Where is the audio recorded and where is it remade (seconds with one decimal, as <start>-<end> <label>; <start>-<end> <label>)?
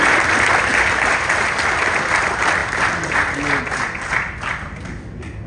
0.0-5.5 recorded